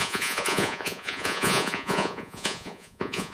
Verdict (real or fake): fake